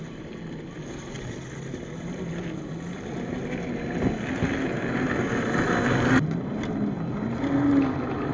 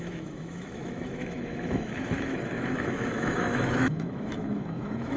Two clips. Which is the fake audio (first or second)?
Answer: second